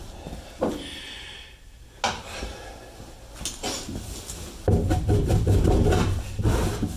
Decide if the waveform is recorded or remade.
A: recorded